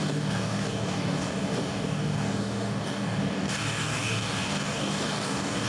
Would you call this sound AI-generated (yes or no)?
yes